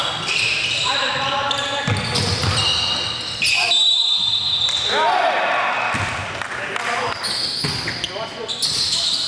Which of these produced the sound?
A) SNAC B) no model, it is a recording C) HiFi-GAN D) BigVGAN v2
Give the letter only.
B